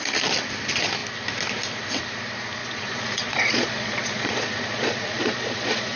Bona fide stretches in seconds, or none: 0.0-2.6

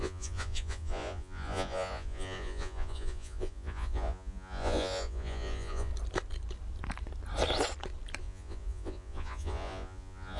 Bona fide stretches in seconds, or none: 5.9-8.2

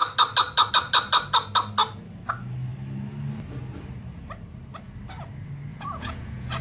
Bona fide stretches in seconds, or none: 0.0-5.7

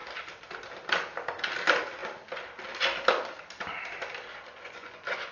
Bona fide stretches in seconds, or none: 0.0-4.5

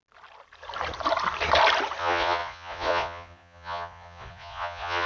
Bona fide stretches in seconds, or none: 0.0-2.0

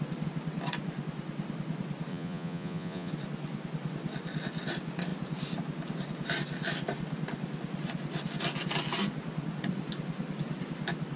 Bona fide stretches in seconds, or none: 0.0-2.1; 3.1-11.2

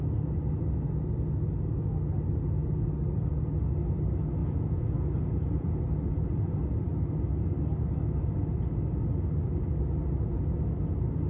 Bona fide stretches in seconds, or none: 0.0-4.4; 5.8-11.3